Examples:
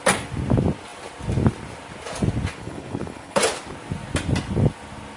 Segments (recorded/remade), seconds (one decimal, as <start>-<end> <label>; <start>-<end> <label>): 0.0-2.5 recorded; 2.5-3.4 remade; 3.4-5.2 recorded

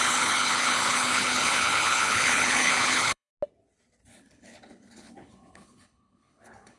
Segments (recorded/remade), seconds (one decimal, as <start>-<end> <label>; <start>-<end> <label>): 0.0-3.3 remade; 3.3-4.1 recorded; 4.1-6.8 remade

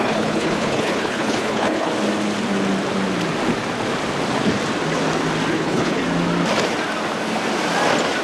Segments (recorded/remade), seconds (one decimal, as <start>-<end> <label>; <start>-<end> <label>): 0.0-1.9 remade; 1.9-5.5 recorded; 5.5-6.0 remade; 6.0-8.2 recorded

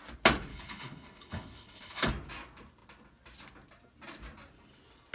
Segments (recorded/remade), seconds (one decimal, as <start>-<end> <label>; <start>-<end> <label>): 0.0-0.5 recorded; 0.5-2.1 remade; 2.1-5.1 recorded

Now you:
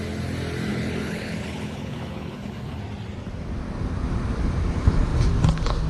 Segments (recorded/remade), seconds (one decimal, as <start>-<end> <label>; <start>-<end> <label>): 0.0-0.7 recorded; 0.7-2.8 remade; 2.8-5.9 recorded

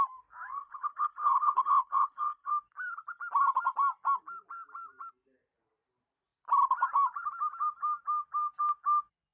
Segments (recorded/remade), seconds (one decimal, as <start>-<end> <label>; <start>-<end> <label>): 0.0-0.6 recorded; 0.6-2.5 remade; 2.5-9.3 recorded